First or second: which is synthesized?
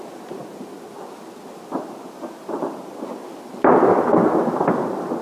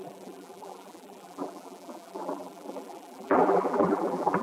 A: second